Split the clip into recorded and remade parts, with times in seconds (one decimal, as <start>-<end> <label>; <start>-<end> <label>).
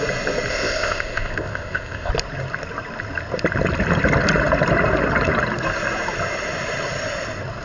0.0-0.5 recorded; 0.5-2.1 remade; 2.1-7.6 recorded